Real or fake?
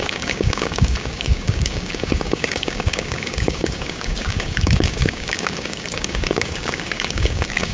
fake